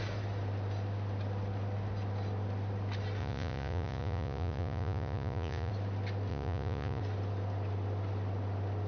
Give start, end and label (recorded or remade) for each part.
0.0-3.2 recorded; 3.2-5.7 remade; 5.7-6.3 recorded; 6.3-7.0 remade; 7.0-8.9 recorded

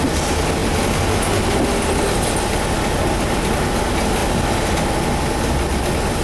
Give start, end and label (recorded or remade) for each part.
0.0-6.2 recorded

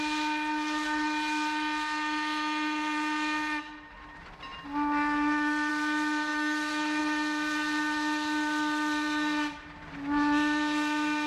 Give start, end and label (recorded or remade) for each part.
0.0-6.3 recorded; 6.3-7.0 remade; 7.0-11.3 recorded

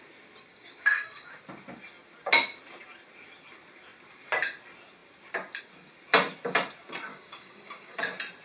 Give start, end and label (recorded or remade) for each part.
0.0-0.5 recorded; 0.5-1.3 remade; 1.3-7.1 recorded; 7.1-8.0 remade; 8.0-8.4 recorded

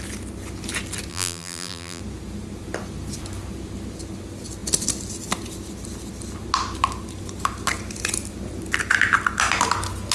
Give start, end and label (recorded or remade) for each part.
0.0-1.1 recorded; 1.1-2.0 remade; 2.0-10.1 recorded